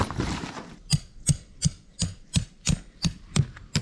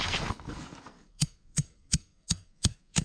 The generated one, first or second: second